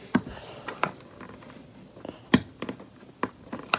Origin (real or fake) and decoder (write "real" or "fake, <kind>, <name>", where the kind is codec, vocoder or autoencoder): fake, vocoder, BigVGAN v2